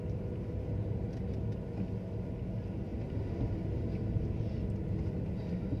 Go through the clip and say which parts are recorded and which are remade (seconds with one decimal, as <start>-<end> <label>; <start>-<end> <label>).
0.0-5.8 recorded